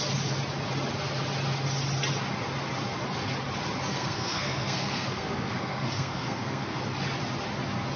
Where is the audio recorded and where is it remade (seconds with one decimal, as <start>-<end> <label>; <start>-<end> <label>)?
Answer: 0.0-3.9 recorded; 3.9-6.8 remade; 6.8-8.0 recorded